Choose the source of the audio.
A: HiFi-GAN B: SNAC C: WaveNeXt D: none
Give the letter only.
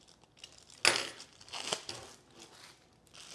D